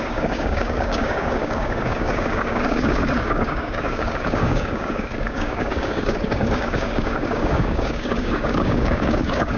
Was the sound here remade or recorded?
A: remade